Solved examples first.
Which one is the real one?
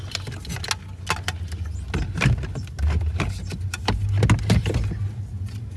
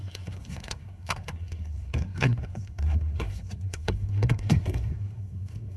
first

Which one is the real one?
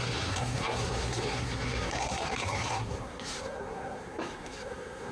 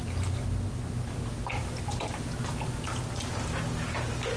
second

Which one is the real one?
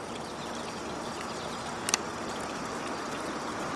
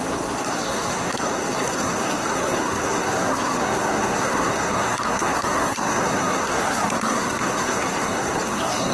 first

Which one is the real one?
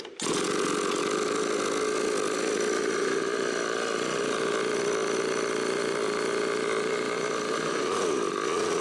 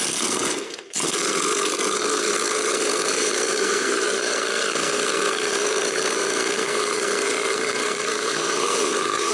first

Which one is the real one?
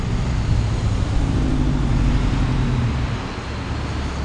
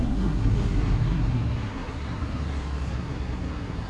first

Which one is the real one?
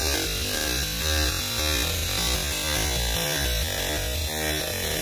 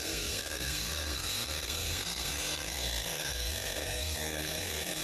first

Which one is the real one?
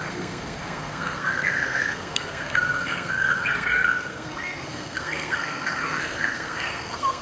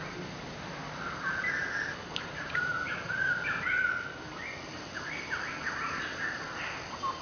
second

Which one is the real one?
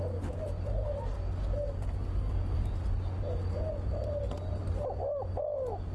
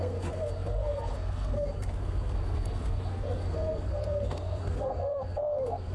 first